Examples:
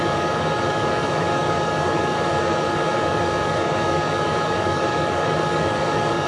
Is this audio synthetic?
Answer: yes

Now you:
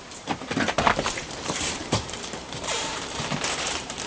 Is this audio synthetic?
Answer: yes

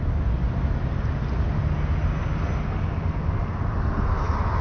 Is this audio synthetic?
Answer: no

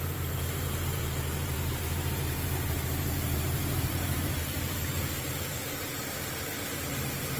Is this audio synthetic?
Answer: yes